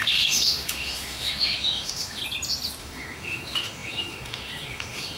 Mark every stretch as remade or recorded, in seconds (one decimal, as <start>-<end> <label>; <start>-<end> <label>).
0.0-2.2 remade; 2.2-2.8 recorded; 2.8-5.2 remade